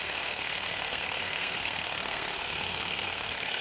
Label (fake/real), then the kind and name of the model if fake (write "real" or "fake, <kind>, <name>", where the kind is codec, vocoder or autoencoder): fake, codec, SNAC